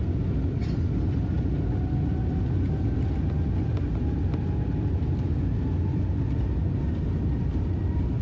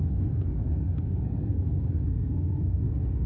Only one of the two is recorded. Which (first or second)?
first